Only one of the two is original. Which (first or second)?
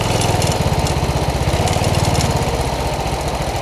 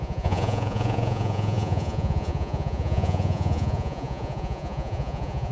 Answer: first